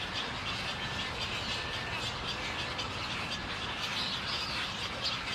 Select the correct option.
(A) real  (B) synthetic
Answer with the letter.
A